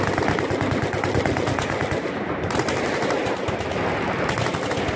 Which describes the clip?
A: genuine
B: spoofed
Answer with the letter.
A